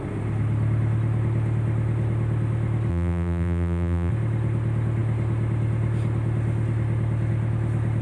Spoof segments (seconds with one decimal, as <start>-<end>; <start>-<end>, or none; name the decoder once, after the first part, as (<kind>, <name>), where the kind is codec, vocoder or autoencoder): 2.9-4.1 (vocoder, BigVGAN v2)